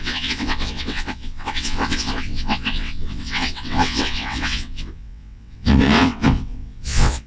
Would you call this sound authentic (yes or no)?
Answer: no